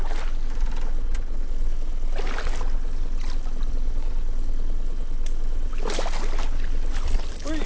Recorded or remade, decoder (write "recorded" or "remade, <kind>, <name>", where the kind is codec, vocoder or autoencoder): recorded